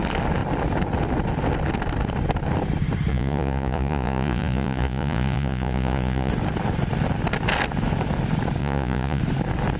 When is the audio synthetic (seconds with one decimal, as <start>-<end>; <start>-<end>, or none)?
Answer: 3.1-6.3; 8.6-9.2